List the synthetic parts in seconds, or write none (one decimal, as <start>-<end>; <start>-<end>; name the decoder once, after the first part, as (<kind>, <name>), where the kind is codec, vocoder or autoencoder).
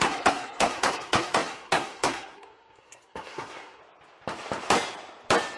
0.0-3.8 (codec, SNAC)